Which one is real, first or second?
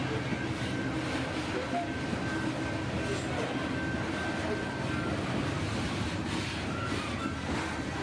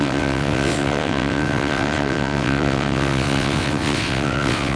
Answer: first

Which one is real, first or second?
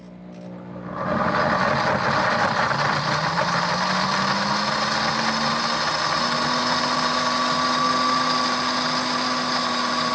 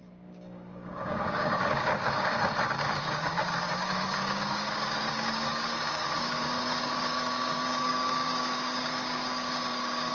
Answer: first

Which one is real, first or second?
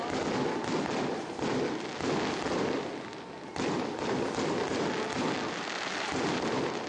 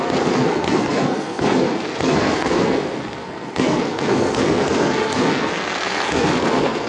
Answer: first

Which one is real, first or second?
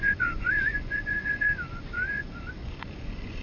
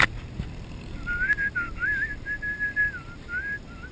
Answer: second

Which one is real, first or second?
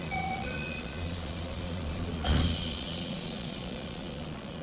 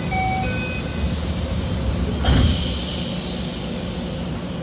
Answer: second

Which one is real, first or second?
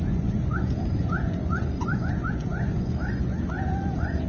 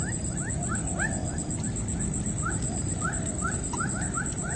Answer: second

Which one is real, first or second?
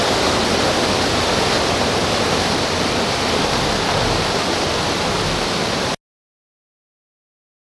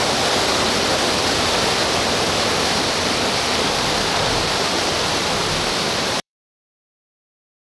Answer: first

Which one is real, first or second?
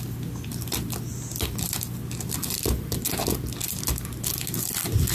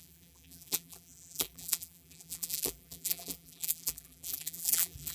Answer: first